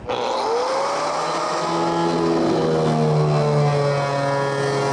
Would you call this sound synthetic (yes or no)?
no